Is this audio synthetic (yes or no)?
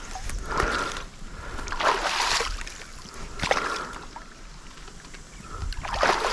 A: no